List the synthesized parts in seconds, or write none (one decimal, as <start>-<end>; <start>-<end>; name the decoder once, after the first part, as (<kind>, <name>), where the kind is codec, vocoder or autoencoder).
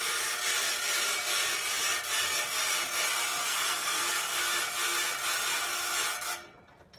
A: 3.4-4.4 (codec, SNAC)